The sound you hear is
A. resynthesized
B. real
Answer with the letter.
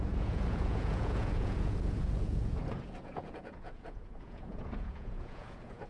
A